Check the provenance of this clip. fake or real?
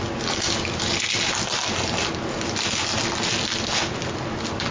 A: real